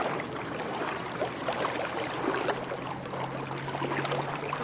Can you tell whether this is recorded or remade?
recorded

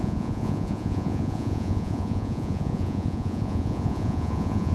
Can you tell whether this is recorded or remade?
remade